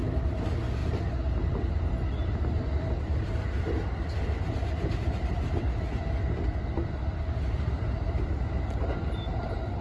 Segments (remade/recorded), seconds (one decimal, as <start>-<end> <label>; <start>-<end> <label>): 0.0-9.8 recorded

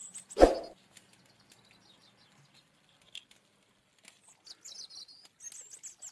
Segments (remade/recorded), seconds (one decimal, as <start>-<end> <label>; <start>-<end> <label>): 0.0-6.1 recorded

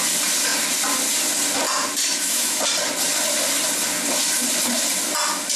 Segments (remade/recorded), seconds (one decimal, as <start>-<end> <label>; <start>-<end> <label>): 0.0-2.0 recorded; 2.0-2.6 remade; 2.6-5.6 recorded

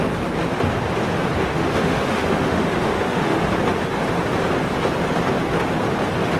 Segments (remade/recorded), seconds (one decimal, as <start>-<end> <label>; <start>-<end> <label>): 0.0-1.5 recorded; 1.5-3.4 remade; 3.4-6.4 recorded